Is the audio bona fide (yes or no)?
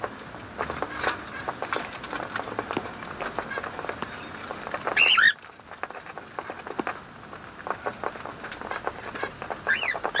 no